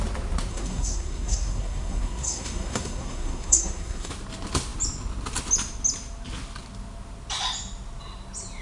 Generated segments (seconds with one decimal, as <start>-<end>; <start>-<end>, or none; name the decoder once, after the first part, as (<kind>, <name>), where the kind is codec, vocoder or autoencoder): 0.5-4.1 (codec, SNAC)

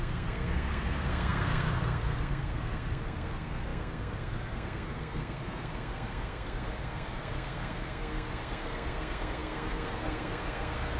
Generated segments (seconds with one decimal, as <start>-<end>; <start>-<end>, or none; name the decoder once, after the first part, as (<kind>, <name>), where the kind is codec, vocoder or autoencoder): 0.0-11.0 (codec, SNAC)

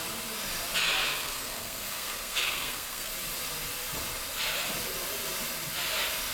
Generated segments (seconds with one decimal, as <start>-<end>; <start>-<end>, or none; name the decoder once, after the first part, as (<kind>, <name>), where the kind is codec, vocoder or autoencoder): 1.0-3.1 (codec, SNAC)

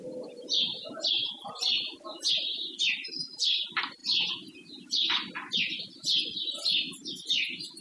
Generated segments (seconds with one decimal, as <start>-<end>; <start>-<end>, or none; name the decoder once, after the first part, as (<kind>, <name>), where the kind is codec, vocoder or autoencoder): none

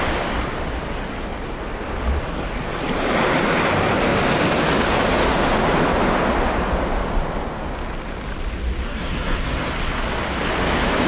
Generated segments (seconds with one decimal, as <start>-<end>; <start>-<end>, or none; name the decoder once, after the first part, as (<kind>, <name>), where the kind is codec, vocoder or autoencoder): 8.9-9.7 (codec, SNAC)

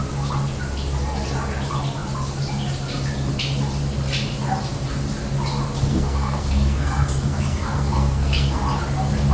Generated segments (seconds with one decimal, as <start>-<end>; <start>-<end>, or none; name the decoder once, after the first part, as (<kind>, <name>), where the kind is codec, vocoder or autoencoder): 5.9-8.6 (codec, SNAC)